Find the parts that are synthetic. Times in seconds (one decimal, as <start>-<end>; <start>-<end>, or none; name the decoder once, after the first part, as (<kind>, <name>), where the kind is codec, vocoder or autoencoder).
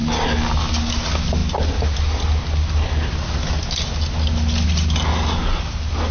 none